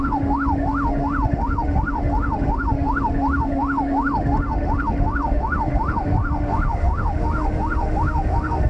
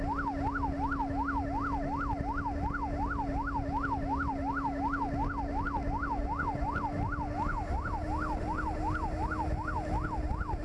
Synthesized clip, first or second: first